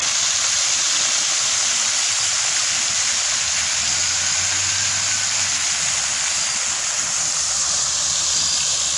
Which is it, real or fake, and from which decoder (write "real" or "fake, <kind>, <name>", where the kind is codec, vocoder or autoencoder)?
real